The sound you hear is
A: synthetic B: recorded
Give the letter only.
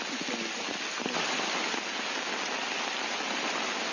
B